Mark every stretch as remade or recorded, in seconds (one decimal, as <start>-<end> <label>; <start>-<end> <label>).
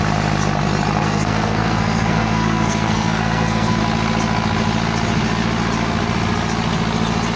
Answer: 0.0-1.0 recorded; 1.0-3.8 remade; 3.8-7.4 recorded